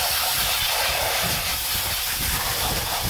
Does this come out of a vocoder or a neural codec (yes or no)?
no